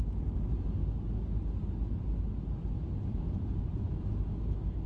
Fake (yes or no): no